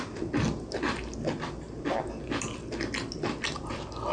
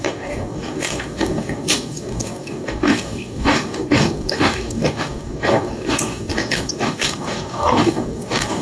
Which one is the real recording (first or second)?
first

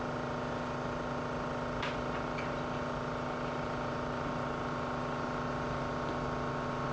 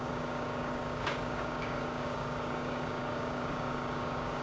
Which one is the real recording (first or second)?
first